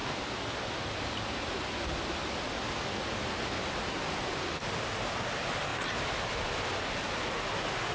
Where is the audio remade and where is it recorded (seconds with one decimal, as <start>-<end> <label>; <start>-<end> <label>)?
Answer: 0.0-7.9 recorded